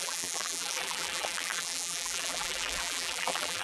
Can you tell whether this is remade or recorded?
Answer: remade